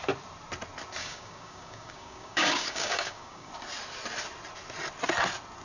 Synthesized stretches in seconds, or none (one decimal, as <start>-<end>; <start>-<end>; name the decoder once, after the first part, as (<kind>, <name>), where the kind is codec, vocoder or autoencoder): 1.0-3.5 (codec, DAC)